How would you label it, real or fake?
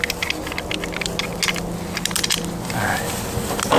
real